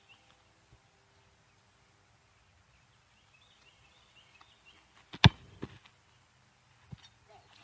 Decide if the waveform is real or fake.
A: real